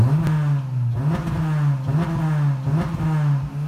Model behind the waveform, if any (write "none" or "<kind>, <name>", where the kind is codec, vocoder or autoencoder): none